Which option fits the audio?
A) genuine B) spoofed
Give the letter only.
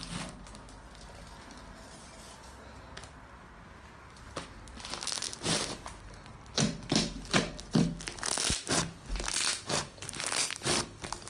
A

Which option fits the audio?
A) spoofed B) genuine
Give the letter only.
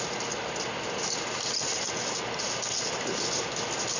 B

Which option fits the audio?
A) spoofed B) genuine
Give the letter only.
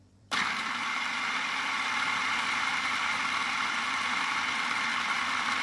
A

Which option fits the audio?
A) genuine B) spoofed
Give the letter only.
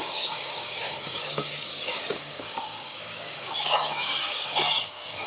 B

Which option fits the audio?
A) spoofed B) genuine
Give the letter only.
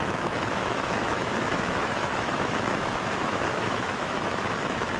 A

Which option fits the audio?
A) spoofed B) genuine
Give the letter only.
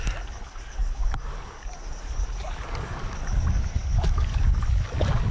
A